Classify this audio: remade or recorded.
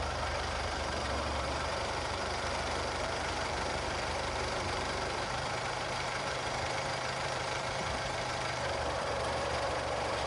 remade